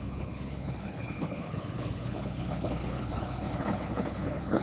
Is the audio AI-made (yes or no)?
yes